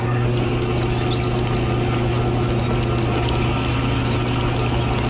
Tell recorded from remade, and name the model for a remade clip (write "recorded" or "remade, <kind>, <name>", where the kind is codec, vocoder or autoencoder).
recorded